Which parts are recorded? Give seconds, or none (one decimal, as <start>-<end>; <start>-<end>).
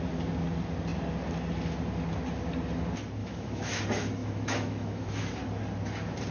0.0-3.2; 3.8-4.2; 5.3-6.3